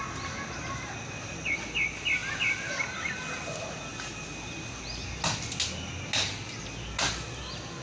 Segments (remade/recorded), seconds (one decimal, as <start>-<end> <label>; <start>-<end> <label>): 0.0-7.8 recorded